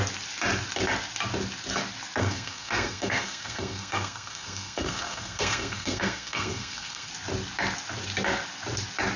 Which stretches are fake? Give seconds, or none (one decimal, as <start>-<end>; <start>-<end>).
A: 2.2-7.1